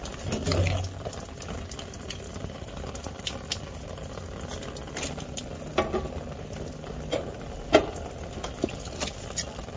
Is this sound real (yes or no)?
yes